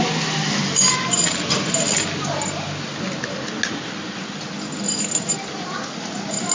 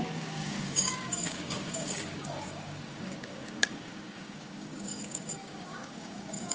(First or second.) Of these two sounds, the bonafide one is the first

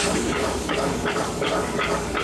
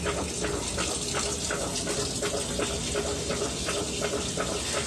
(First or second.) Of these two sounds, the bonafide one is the second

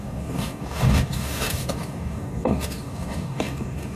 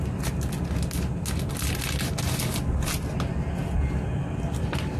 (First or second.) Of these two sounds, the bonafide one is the second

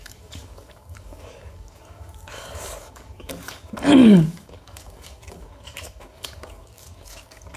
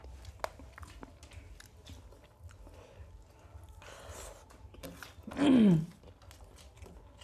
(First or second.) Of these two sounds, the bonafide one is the second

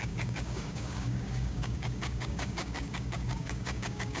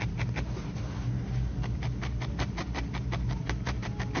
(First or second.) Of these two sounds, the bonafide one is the second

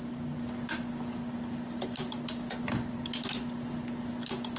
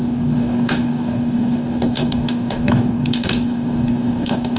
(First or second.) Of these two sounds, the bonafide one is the first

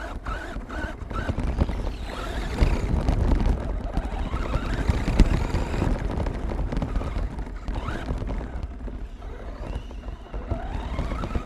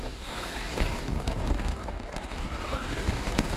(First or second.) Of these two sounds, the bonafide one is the first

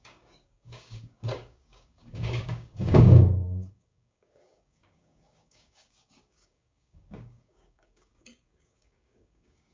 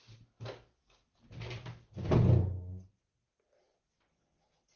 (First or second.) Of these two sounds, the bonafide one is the second